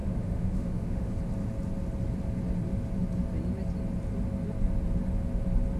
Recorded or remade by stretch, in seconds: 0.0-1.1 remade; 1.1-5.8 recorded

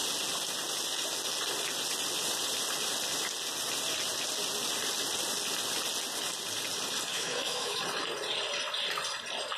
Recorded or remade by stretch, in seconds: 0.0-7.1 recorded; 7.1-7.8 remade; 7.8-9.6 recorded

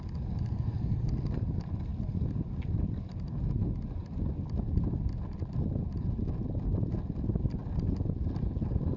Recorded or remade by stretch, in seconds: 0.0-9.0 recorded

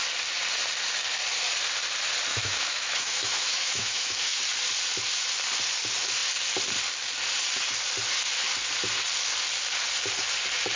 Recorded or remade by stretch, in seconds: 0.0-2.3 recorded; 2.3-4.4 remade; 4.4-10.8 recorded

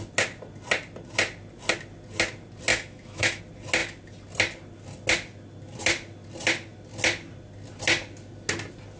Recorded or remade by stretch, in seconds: 0.0-2.7 recorded; 2.7-3.4 remade; 3.4-9.0 recorded

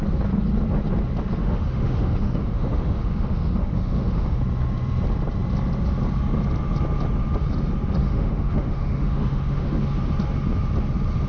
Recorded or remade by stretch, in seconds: 0.0-1.4 recorded; 1.4-4.4 remade; 4.4-8.0 recorded; 8.0-9.8 remade; 9.8-11.3 recorded

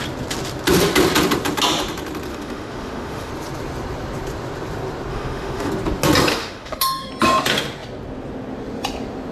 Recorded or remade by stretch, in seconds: 0.0-2.3 recorded; 2.3-3.3 remade; 3.3-5.1 recorded; 5.1-5.7 remade; 5.7-6.3 recorded; 6.3-7.1 remade; 7.1-9.3 recorded

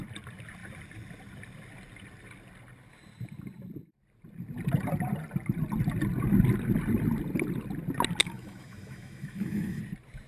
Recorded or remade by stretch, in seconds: 0.0-8.2 recorded; 8.2-9.8 remade; 9.8-10.3 recorded